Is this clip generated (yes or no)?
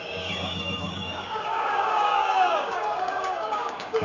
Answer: yes